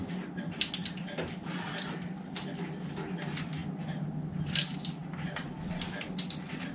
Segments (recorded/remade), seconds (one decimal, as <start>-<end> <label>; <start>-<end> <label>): 0.0-6.7 recorded